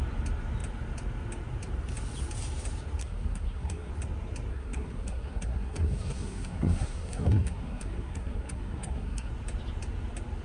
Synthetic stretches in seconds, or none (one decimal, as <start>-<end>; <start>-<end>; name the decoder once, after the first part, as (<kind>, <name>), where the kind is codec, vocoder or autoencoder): 3.0-3.9 (codec, SNAC); 4.5-9.3